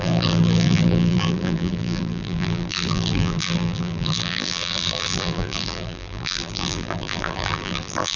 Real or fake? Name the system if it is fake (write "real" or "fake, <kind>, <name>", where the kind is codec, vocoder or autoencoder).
fake, vocoder, BigVGAN v2